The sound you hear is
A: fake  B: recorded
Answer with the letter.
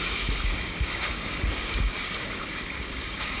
A